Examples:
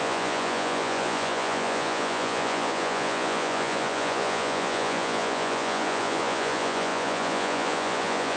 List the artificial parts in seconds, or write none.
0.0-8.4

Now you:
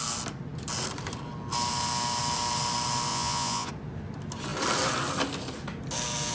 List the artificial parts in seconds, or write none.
3.1-3.7